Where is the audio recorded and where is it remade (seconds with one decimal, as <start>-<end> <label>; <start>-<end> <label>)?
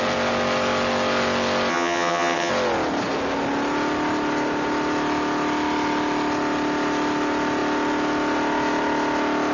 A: 0.0-1.7 recorded; 1.7-2.5 remade; 2.5-9.5 recorded